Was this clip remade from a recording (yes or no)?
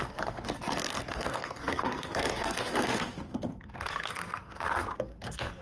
yes